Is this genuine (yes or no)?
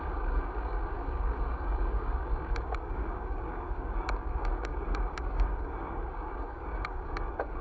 no